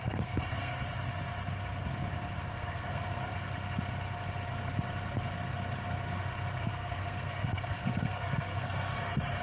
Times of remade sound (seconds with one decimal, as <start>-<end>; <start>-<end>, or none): 0.0-0.7; 2.5-3.3; 6.6-9.4